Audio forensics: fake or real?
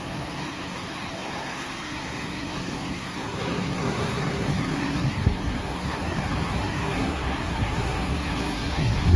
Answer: fake